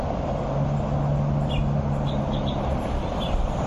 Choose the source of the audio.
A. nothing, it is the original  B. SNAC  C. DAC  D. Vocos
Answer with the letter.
A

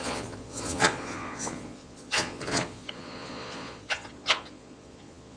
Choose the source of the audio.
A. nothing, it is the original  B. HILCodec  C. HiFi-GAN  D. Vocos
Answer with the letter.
D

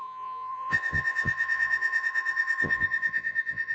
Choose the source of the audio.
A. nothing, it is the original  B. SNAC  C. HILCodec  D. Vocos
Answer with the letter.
D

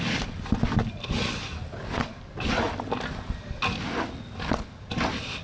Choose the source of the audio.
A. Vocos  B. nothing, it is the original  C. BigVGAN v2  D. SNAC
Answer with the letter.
B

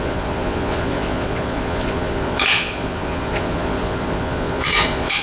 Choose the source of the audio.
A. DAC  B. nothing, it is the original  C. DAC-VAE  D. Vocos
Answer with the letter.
D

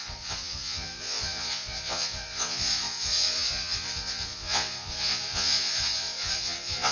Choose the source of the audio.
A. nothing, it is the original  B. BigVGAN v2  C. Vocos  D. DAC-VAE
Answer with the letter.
C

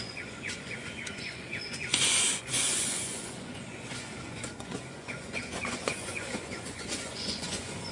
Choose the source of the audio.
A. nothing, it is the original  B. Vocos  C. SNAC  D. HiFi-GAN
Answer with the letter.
B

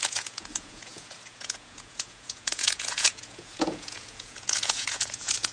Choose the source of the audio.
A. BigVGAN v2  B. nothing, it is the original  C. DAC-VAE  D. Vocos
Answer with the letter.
D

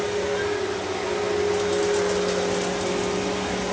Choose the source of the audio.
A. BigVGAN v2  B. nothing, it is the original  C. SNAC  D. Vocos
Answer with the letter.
B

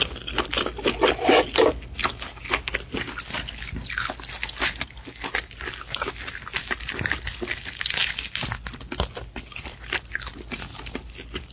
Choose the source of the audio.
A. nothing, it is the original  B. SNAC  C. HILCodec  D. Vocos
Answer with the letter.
A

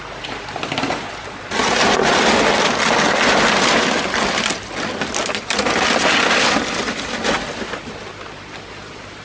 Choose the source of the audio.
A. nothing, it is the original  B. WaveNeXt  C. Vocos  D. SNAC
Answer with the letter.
A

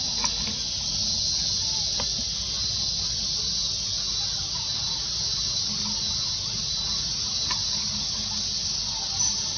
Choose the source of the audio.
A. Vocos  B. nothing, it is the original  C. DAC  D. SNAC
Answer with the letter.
B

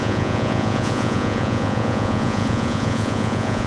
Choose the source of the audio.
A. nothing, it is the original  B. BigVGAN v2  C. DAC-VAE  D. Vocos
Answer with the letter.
D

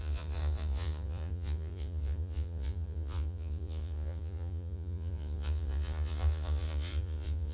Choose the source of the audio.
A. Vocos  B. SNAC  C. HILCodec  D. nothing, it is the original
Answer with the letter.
A